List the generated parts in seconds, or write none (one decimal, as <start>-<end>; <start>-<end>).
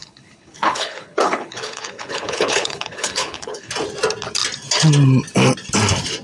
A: 0.0-3.7